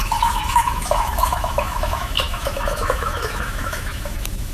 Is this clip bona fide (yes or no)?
no